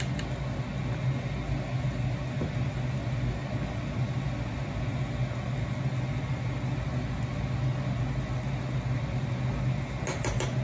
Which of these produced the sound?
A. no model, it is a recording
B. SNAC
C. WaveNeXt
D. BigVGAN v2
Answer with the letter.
A